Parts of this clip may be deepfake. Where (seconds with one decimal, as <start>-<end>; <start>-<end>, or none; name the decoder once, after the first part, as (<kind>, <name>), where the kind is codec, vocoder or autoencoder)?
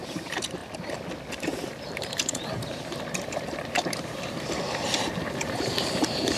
0.0-0.6 (vocoder, BigVGAN v2); 1.3-6.4